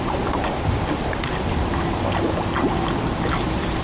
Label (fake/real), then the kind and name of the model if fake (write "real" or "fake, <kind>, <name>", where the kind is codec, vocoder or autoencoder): real